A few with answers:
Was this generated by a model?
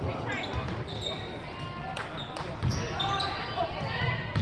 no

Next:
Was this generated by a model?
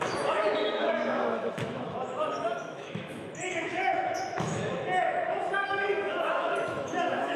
yes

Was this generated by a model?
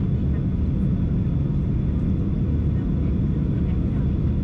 no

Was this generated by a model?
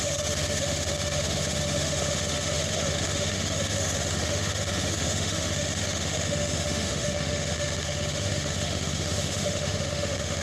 yes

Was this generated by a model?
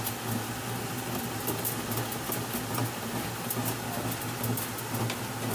no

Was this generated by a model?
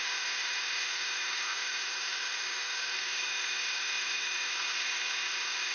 yes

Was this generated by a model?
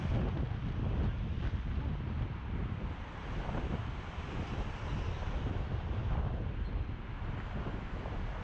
no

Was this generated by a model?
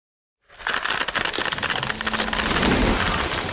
no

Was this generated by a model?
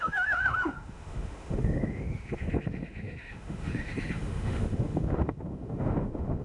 yes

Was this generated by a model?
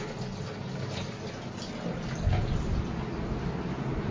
no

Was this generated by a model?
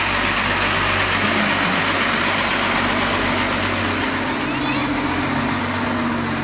no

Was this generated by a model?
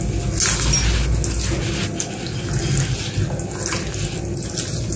no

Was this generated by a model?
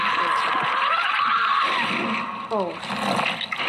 no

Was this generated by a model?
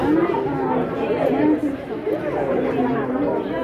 no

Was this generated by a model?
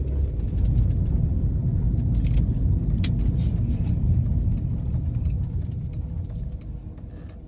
no